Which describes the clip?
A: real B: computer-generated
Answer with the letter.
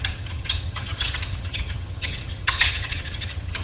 B